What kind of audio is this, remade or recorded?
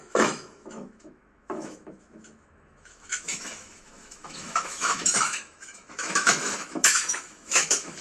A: remade